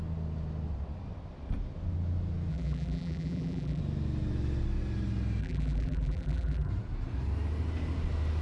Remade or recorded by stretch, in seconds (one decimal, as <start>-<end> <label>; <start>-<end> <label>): 0.0-2.5 recorded; 2.5-3.8 remade; 3.8-5.4 recorded; 5.4-6.7 remade; 6.7-8.4 recorded

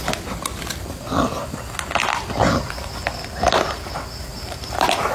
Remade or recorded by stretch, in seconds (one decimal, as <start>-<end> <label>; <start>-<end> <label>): 0.0-4.3 recorded; 4.3-5.1 remade

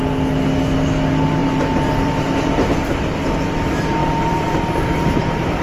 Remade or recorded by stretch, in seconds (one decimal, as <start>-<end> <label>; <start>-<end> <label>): 0.0-1.4 recorded; 1.4-3.0 remade; 3.0-4.0 recorded; 4.0-5.6 remade

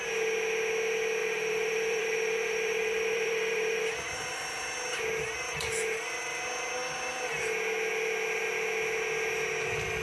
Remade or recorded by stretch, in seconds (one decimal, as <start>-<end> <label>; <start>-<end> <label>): 0.0-1.2 recorded; 1.2-3.8 remade; 3.8-10.0 recorded